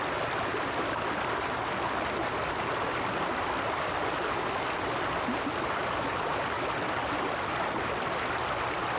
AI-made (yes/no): no